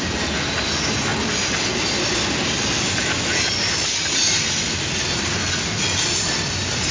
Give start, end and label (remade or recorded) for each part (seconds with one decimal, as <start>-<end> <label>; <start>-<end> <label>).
0.0-1.1 recorded; 1.1-1.7 remade; 1.7-6.9 recorded